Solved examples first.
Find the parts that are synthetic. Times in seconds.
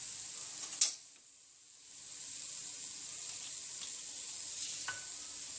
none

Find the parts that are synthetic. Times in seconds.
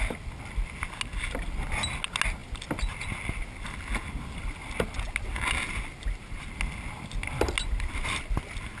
none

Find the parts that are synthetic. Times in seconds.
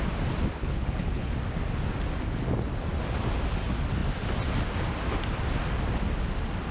0.6-1.3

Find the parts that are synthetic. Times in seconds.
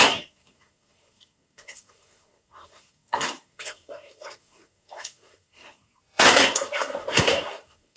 0.0-8.0